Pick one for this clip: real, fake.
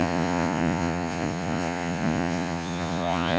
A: fake